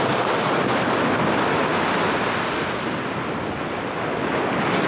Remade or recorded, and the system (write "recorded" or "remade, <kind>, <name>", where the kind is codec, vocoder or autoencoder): recorded